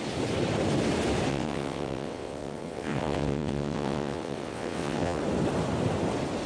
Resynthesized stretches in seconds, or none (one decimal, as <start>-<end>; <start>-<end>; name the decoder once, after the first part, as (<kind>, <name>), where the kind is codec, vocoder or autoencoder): 1.3-5.2 (vocoder, WaveNeXt)